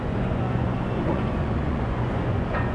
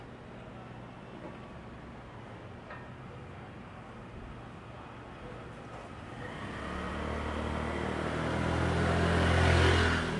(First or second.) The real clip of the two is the second